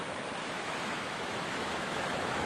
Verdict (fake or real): fake